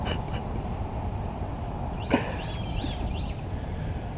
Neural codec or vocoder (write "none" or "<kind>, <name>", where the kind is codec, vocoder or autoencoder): none